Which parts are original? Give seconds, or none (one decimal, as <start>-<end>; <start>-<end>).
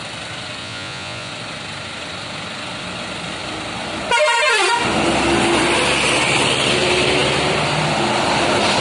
0.0-0.6; 1.3-8.8